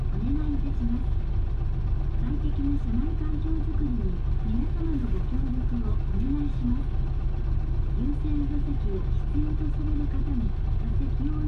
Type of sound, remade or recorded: recorded